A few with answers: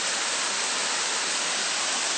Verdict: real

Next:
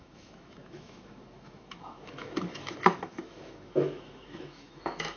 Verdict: fake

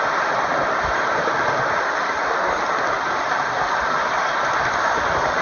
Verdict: real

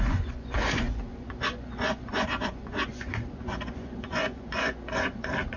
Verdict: fake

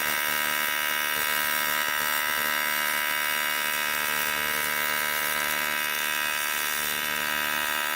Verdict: fake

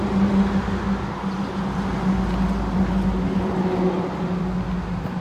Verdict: real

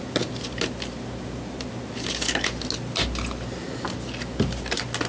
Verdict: real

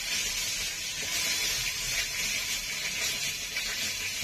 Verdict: real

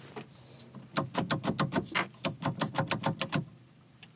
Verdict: real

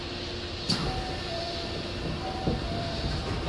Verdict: fake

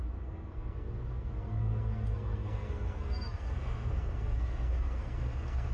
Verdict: fake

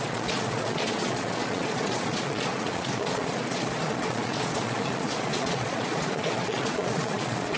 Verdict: fake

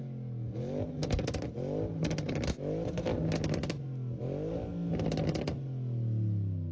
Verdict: real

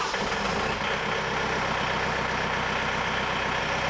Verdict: real